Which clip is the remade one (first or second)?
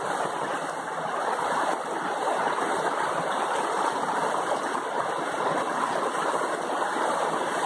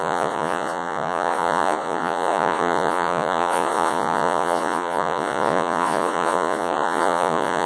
second